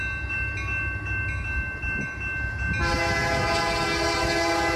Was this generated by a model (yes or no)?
no